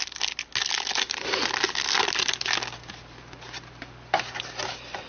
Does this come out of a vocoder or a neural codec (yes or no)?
no